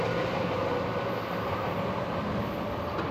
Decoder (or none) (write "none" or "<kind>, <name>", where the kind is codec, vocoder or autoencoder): none